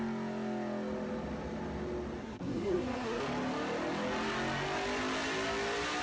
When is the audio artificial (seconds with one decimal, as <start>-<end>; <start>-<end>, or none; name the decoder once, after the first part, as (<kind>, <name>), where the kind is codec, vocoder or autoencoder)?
2.2-3.2 (codec, SNAC)